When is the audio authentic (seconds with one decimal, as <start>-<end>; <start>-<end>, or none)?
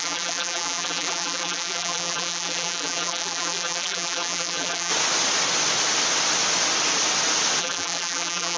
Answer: 4.9-7.6